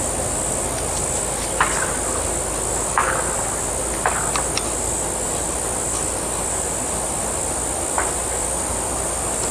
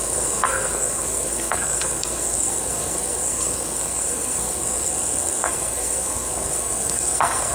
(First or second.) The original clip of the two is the first